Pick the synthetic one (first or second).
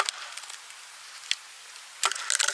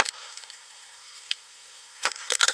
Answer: second